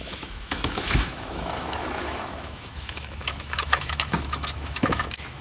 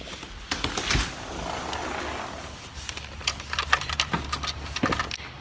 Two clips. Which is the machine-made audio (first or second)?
first